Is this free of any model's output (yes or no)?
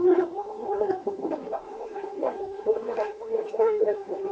no